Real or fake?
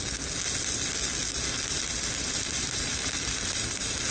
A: real